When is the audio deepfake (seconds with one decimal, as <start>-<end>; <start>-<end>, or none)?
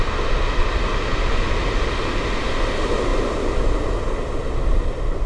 none